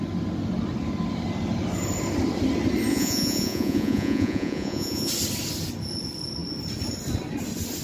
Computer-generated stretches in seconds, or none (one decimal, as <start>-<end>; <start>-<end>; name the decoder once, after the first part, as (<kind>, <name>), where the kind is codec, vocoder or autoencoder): 2.9-5.1 (vocoder, Vocos)